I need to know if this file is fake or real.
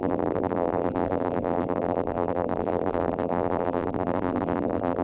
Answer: fake